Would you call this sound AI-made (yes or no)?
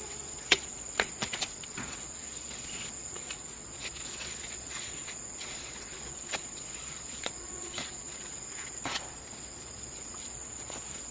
yes